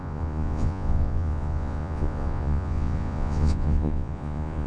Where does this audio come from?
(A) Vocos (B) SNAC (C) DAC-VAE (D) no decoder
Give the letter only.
A